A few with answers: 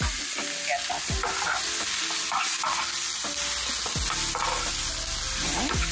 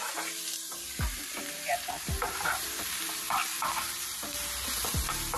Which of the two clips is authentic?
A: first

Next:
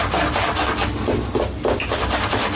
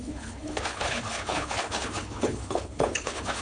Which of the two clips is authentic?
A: first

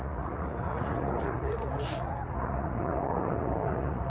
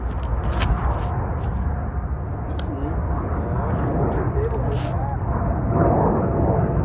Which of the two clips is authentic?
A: second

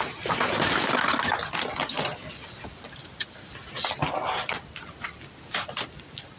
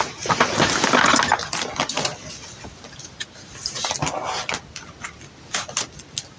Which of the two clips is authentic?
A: second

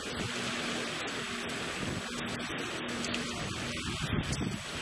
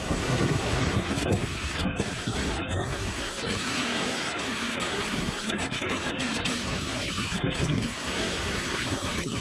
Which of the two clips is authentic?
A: first